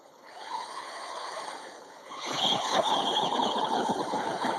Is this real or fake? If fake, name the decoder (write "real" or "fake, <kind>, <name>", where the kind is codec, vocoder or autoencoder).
fake, codec, HILCodec